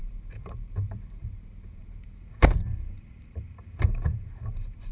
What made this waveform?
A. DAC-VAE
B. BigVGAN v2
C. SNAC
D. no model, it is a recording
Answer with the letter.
B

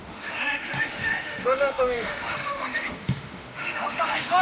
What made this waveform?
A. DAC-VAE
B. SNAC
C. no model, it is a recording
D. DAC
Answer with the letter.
A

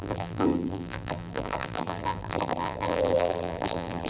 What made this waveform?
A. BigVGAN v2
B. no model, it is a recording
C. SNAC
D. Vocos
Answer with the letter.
A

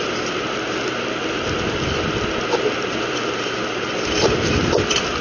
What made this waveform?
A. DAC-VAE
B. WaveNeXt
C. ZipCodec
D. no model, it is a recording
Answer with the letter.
D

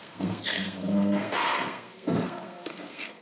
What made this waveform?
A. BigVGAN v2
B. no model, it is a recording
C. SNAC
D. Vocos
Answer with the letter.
C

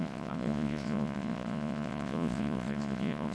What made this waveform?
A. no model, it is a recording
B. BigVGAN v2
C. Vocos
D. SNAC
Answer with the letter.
C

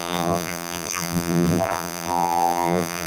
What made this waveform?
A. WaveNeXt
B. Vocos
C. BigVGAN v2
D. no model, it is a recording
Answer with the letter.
C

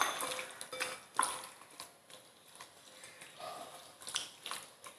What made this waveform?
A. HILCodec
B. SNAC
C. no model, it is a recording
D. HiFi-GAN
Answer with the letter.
C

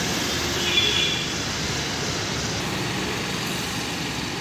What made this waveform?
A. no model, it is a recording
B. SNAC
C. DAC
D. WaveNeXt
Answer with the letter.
A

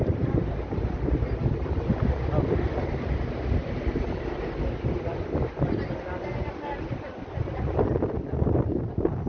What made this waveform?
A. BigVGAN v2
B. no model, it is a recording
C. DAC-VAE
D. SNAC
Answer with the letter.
B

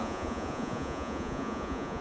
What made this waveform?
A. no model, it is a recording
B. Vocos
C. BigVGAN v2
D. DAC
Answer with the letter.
B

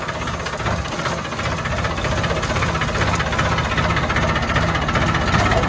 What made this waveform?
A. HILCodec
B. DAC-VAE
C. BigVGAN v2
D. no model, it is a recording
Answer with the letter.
D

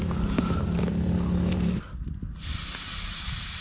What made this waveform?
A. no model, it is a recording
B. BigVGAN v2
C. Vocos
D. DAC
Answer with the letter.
A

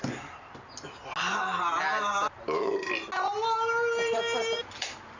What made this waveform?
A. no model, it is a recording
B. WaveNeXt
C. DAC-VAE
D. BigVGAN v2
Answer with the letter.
A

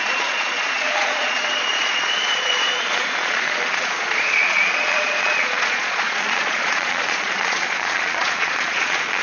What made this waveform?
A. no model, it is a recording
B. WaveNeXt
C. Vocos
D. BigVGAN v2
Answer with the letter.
C